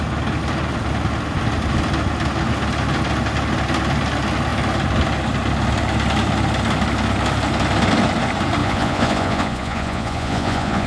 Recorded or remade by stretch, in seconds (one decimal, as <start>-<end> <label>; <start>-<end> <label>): 0.0-8.6 recorded; 8.6-10.9 remade

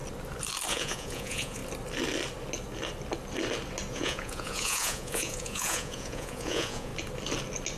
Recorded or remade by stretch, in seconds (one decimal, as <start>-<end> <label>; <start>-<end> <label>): 0.0-0.7 recorded; 0.7-1.6 remade; 1.6-3.9 recorded; 3.9-6.9 remade; 6.9-7.8 recorded

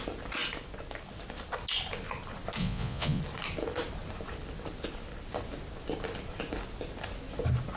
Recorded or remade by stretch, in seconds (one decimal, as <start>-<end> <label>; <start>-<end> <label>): 0.0-2.6 recorded; 2.6-3.2 remade; 3.2-7.8 recorded

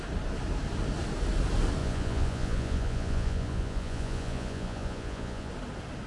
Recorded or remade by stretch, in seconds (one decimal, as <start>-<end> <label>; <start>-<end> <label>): 0.0-1.8 recorded; 1.8-5.5 remade; 5.5-6.1 recorded

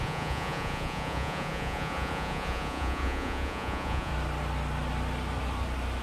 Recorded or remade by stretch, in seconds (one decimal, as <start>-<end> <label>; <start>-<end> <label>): 0.0-4.1 remade; 4.1-6.0 recorded

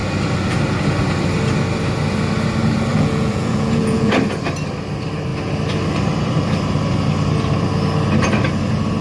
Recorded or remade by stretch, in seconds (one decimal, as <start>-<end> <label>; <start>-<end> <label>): 0.0-2.9 recorded; 2.9-4.1 remade; 4.1-9.0 recorded

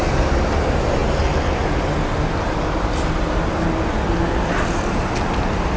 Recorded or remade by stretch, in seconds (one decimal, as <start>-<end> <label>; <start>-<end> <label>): 0.0-5.8 recorded

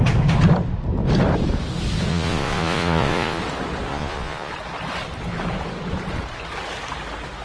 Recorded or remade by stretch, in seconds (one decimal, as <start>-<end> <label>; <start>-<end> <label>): 0.0-2.1 recorded; 2.1-3.4 remade; 3.4-3.9 recorded; 3.9-4.5 remade; 4.5-7.4 recorded